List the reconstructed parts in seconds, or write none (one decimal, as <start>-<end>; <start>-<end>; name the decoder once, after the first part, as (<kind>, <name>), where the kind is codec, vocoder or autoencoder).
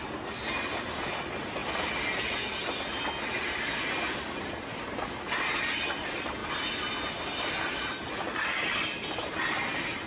none